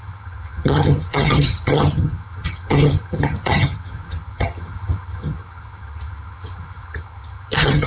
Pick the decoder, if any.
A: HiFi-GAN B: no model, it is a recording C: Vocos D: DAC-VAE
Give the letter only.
A